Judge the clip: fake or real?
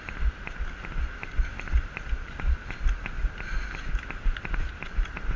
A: real